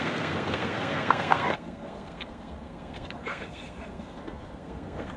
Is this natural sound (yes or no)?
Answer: no